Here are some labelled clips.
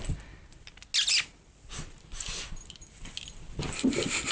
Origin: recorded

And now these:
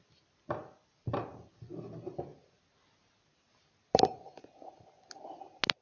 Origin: recorded